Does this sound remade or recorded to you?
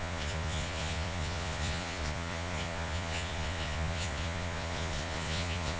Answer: remade